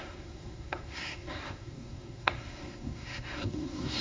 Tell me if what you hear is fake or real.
fake